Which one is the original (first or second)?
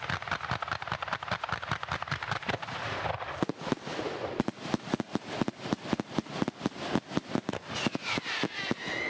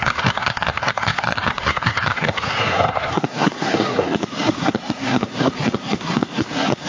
first